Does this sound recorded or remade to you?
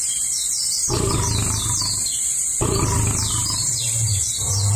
recorded